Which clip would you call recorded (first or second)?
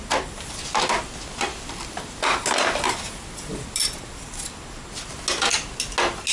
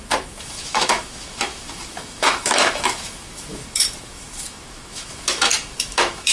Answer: first